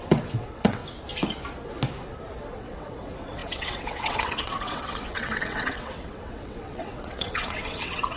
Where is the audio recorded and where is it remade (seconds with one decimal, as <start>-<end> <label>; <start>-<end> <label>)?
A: 0.0-0.8 remade; 0.8-2.5 recorded; 2.5-8.2 remade